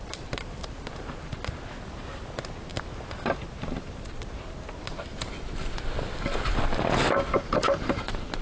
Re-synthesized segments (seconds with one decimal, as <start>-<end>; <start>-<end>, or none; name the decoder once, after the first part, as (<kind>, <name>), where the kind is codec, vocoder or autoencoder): none